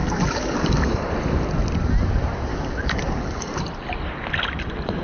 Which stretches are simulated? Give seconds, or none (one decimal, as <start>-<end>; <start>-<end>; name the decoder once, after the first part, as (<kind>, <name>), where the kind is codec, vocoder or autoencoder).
0.0-1.1 (codec, DAC); 2.5-3.7